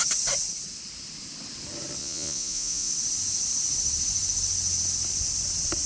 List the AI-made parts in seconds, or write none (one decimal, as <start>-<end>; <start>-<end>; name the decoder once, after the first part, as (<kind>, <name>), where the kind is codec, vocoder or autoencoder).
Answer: 2.0-2.9 (vocoder, Vocos)